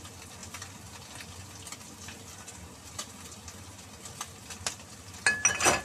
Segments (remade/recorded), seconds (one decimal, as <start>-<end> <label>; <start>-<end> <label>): 0.0-5.8 recorded